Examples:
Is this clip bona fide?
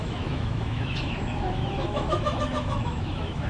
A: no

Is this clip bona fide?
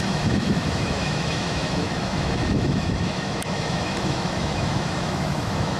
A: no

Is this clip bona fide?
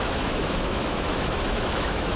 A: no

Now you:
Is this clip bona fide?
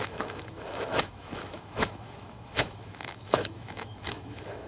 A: no